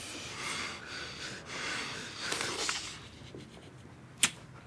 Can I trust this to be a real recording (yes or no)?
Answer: yes